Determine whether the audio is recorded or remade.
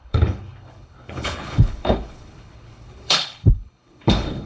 remade